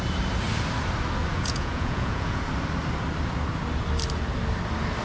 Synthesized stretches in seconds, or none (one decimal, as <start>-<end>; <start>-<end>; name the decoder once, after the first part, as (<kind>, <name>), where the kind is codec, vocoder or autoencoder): 1.3-2.5 (vocoder, Vocos)